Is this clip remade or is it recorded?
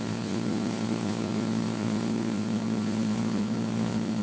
remade